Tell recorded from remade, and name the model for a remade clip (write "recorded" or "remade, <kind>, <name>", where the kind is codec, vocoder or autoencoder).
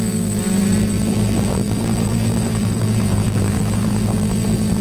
remade, vocoder, BigVGAN v2